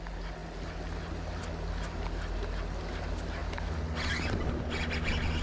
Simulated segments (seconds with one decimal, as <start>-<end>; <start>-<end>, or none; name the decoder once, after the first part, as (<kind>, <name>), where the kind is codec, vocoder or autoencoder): none